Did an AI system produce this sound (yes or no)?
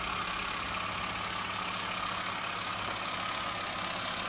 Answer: no